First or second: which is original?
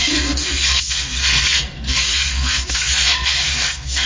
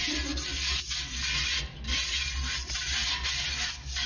second